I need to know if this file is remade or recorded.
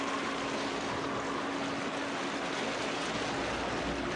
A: recorded